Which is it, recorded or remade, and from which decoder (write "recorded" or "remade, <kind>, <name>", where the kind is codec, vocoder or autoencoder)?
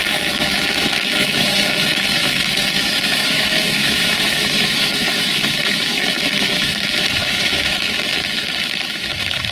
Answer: remade, autoencoder, DAC-VAE